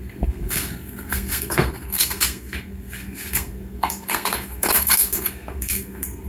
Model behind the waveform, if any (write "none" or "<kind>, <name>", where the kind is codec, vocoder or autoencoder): codec, SNAC